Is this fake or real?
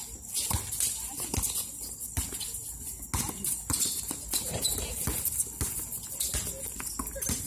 real